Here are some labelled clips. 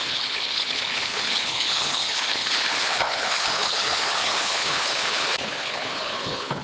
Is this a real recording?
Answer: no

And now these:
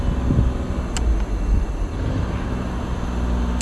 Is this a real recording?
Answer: yes